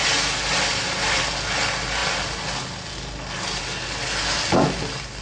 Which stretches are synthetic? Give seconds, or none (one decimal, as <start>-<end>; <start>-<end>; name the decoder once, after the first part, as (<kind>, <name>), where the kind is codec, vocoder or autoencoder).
none